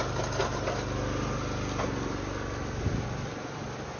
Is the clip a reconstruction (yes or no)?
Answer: no